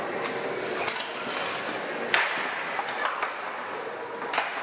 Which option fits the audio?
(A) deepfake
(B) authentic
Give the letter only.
B